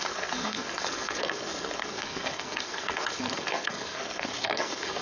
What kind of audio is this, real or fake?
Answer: fake